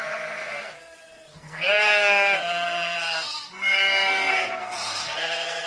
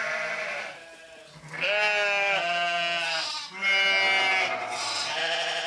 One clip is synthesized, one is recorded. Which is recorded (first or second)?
second